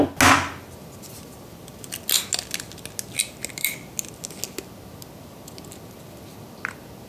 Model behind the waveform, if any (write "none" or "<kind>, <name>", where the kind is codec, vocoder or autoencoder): none